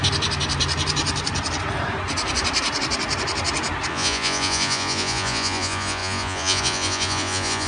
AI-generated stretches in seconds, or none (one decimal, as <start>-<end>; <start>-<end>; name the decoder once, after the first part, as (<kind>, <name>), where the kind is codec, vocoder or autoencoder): 3.9-7.7 (vocoder, Vocos)